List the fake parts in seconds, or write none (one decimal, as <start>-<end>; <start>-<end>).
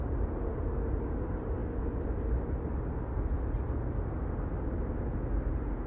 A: none